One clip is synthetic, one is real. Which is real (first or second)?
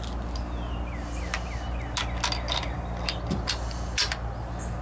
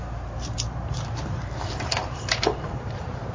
first